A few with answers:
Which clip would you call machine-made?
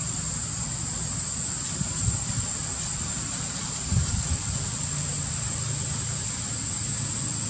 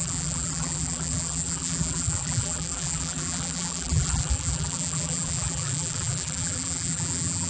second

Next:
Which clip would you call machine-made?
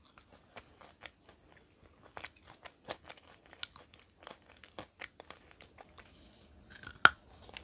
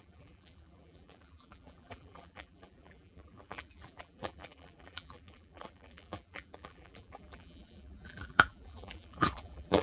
second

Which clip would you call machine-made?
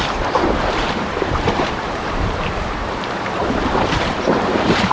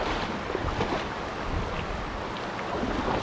first